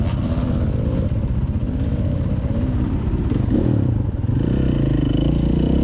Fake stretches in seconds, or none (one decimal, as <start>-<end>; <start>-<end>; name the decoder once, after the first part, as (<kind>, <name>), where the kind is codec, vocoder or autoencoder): 0.0-5.8 (vocoder, BigVGAN v2)